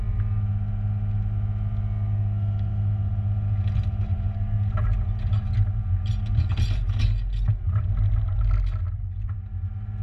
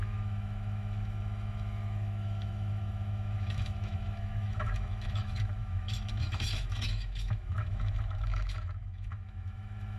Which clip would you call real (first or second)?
first